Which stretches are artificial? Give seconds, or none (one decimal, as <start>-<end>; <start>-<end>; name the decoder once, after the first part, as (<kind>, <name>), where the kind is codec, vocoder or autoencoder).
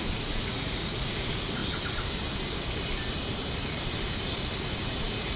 0.0-1.6 (vocoder, Vocos); 4.8-5.4